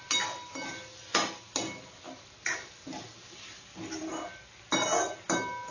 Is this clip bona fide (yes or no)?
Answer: yes